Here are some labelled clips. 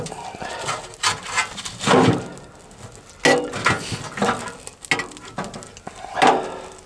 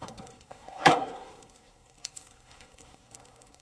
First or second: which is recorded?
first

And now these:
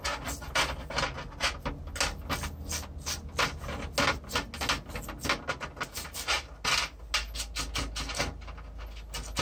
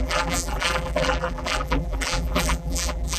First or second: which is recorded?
first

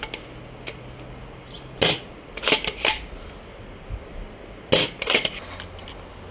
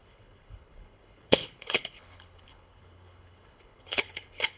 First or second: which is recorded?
first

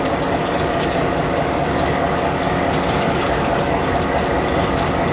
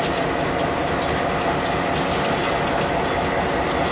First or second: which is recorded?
second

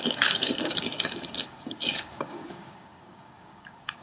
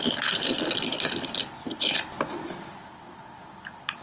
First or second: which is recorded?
second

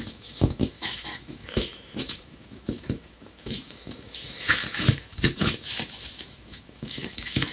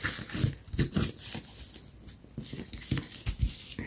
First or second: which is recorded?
second